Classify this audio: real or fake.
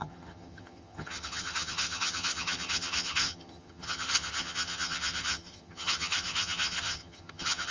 fake